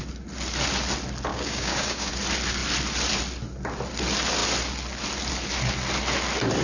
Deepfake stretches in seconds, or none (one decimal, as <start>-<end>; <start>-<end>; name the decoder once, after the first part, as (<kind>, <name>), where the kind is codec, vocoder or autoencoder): 1.3-2.1 (codec, DAC)